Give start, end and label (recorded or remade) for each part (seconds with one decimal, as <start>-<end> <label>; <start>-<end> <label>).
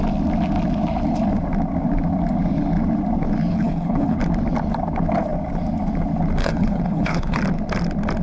0.0-3.5 recorded; 3.5-4.2 remade; 4.2-6.4 recorded; 6.4-7.4 remade; 7.4-8.2 recorded